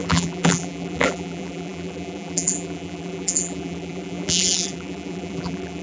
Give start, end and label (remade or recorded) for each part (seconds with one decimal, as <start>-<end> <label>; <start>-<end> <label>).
0.0-5.8 remade

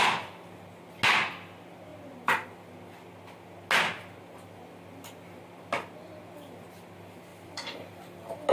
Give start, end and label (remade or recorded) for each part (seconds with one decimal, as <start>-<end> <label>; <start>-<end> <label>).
0.0-7.3 recorded; 7.3-8.0 remade; 8.0-8.5 recorded

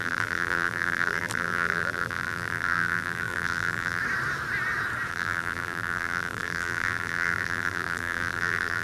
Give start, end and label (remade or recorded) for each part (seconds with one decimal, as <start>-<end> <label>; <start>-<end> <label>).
0.0-4.0 remade; 4.0-5.1 recorded; 5.1-8.8 remade

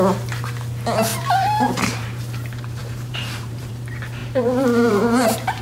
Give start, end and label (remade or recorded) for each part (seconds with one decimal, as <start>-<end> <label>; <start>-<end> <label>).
0.0-1.1 recorded; 1.1-2.2 remade; 2.2-2.8 recorded; 2.8-3.7 remade; 3.7-4.2 recorded; 4.2-5.6 remade

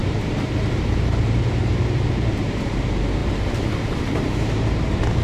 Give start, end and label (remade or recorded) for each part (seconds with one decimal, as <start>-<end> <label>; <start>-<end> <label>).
0.0-2.7 remade; 2.7-3.2 recorded; 3.2-5.2 remade

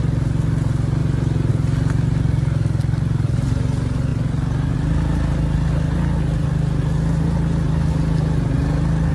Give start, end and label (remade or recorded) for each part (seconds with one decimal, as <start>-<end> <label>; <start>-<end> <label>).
0.0-9.1 recorded